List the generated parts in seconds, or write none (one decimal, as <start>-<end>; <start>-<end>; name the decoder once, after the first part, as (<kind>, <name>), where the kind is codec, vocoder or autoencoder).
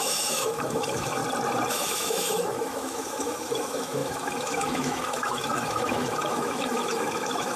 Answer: 0.0-1.2 (autoencoder, DAC-VAE); 1.7-7.6